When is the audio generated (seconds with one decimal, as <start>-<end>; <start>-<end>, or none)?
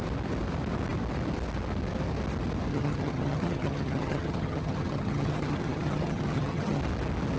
2.7-6.8